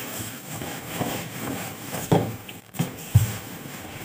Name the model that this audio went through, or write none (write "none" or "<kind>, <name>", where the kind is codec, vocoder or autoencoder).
codec, DAC